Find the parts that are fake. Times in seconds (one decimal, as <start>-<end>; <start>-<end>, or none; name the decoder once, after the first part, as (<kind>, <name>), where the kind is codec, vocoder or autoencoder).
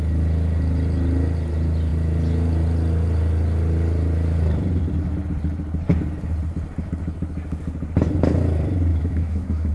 8.9-9.7 (autoencoder, DAC-VAE)